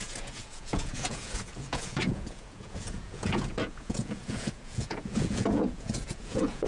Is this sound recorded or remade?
remade